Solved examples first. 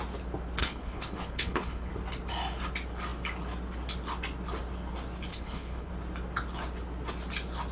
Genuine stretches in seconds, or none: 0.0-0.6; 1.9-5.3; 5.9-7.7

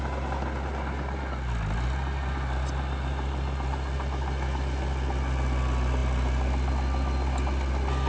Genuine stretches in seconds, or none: 0.0-8.1

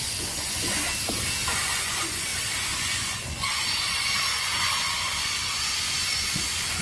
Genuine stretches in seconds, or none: 0.8-1.5

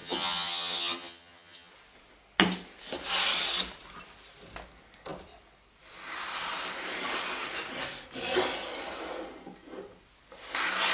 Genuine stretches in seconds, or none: 1.7-10.9

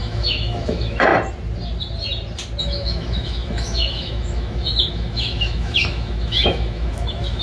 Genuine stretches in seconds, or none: 1.1-2.6

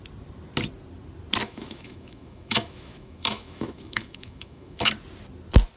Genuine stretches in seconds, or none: 0.0-1.4; 4.9-5.8

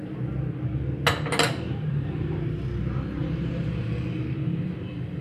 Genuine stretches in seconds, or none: 0.0-1.7; 2.3-3.2